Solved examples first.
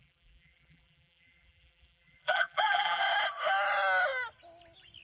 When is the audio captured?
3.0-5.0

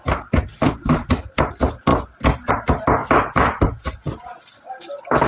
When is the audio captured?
0.0-0.5; 1.1-1.9; 2.5-3.0; 3.9-5.3

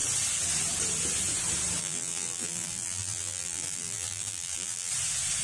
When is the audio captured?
0.0-1.8; 4.9-5.4

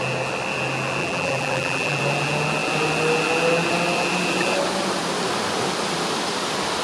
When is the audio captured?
0.0-1.0; 2.0-6.8